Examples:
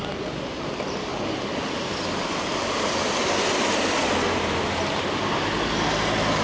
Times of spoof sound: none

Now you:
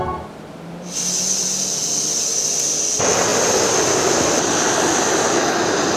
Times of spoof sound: none